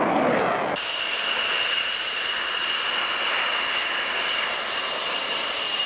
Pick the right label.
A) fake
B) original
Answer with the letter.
B